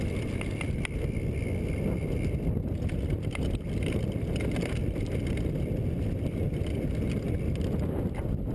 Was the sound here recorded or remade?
recorded